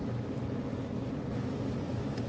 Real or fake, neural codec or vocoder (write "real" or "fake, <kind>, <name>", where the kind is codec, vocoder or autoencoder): real